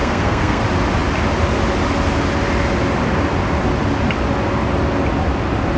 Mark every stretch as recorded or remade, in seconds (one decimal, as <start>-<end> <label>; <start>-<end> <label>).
0.0-0.6 remade; 0.6-5.8 recorded